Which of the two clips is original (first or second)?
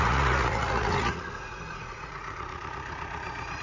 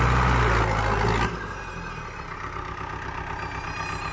second